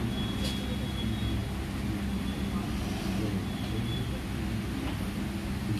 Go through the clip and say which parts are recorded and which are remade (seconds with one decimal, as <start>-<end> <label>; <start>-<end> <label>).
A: 0.0-5.8 recorded

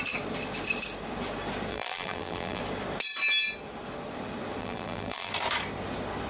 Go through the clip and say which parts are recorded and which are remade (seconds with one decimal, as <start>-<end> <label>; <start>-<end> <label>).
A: 0.0-1.7 recorded; 1.7-2.6 remade; 2.6-4.6 recorded; 4.6-5.3 remade; 5.3-6.3 recorded

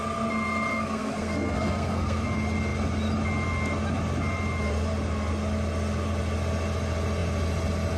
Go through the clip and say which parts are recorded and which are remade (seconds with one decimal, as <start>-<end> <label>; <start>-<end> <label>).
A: 0.0-0.7 recorded; 0.7-2.2 remade; 2.2-8.0 recorded

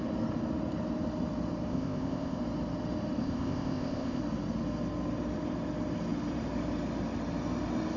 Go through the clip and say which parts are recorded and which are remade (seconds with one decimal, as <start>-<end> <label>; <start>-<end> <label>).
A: 0.0-1.7 recorded; 1.7-2.4 remade; 2.4-3.2 recorded; 3.2-4.2 remade; 4.2-8.0 recorded

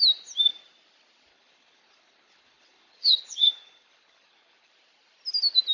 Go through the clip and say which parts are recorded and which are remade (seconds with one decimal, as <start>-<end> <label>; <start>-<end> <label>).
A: 0.0-1.3 recorded; 1.3-4.7 remade; 4.7-5.7 recorded

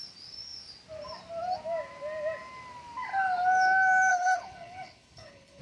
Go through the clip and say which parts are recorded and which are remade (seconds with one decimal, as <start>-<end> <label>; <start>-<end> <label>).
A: 0.0-4.1 recorded; 4.1-5.6 remade

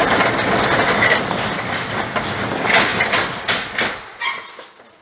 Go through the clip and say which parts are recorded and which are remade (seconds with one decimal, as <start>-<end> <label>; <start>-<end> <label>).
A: 0.0-5.0 recorded

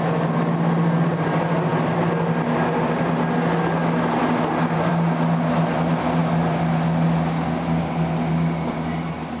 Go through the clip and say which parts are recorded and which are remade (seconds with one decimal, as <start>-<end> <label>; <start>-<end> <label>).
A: 0.0-9.4 recorded